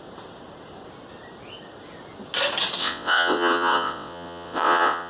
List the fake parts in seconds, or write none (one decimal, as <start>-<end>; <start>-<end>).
2.8-5.1